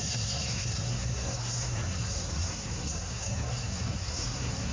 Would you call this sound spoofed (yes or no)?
yes